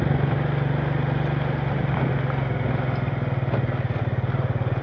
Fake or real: real